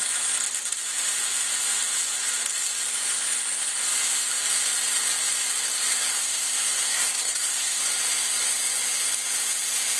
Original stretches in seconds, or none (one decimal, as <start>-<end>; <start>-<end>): 0.0-6.1; 7.8-10.0